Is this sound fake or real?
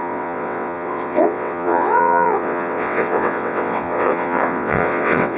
fake